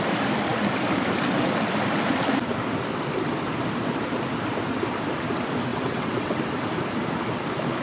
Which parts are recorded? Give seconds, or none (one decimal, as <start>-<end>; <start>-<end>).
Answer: 0.0-5.7; 6.5-7.8